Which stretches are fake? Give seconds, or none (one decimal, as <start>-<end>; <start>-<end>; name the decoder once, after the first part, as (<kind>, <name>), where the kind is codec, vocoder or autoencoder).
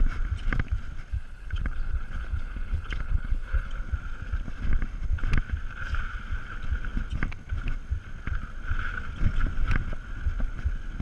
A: 1.1-3.7 (codec, HILCodec)